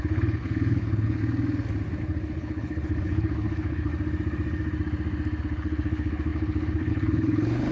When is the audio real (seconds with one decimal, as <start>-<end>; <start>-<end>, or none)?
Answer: 1.2-2.0; 3.9-5.4